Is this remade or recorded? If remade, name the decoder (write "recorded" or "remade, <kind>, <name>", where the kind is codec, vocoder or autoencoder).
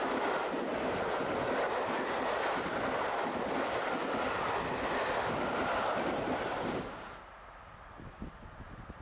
recorded